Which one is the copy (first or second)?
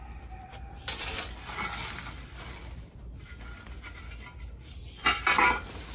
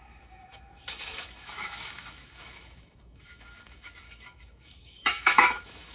second